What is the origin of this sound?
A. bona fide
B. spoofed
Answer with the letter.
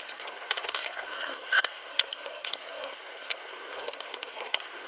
B